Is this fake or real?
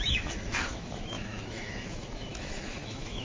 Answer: fake